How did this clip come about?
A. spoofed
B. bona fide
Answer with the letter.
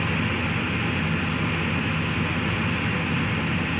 B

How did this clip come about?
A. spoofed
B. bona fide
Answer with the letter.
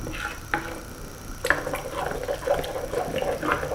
B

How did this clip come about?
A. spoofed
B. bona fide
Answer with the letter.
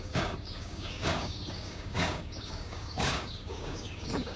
A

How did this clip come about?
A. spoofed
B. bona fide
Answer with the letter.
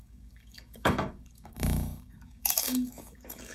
A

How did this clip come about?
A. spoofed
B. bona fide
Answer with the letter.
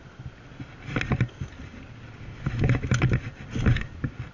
B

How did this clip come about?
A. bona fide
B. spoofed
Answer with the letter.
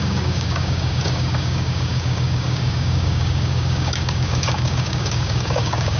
B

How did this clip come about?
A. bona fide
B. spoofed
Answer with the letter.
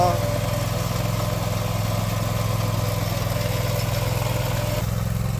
A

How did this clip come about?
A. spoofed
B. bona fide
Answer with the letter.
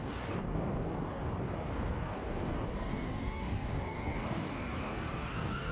A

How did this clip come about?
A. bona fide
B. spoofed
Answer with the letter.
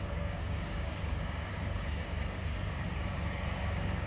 B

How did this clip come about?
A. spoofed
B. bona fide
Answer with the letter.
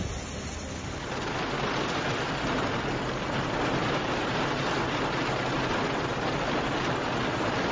B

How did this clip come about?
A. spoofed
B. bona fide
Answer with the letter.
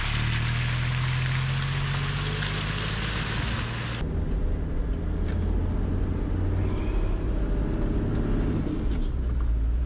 B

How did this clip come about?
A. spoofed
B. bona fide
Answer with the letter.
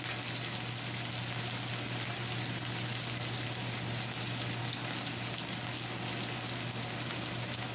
B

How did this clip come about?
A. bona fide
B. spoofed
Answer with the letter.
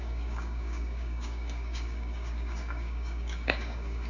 B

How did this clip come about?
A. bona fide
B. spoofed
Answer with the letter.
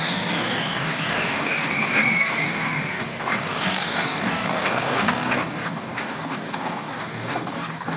B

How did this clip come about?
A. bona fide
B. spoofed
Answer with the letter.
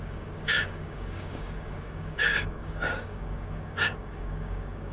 B